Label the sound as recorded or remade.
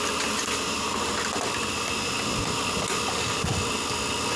recorded